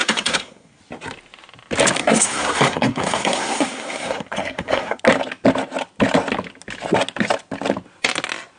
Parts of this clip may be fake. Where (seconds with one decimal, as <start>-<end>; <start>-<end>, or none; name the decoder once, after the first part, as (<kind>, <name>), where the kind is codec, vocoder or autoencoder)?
0.0-0.8 (codec, SNAC); 2.0-5.0